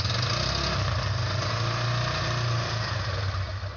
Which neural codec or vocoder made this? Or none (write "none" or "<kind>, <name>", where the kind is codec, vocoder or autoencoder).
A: none